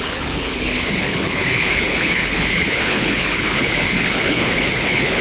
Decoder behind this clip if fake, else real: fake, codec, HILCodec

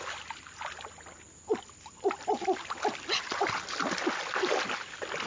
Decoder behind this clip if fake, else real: real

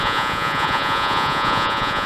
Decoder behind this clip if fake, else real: fake, vocoder, Vocos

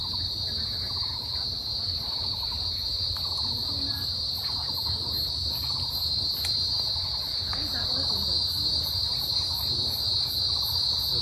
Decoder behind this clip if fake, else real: real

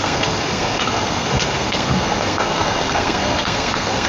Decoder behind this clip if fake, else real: fake, codec, SNAC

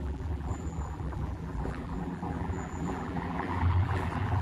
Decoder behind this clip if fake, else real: fake, vocoder, BigVGAN v2